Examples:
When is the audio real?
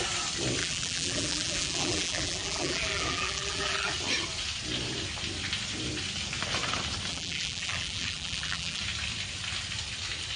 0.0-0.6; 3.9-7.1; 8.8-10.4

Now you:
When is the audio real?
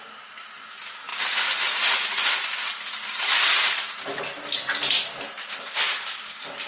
0.0-6.7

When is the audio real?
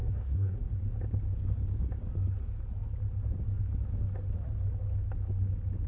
0.8-5.9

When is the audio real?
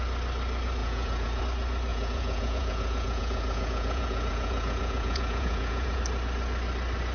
0.0-0.8; 1.4-1.9; 6.0-7.1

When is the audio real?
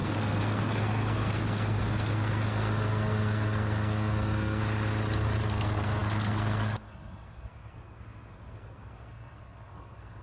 4.6-5.5